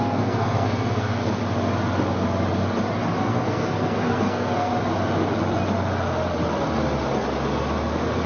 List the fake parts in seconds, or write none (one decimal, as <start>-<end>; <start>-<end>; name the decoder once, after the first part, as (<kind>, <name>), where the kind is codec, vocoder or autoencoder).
0.0-1.4 (codec, SNAC); 3.2-4.7

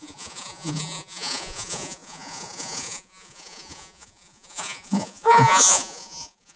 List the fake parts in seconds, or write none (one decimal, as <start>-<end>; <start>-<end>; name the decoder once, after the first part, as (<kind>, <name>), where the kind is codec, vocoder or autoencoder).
0.0-6.6 (vocoder, Vocos)